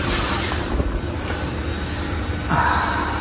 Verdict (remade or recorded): recorded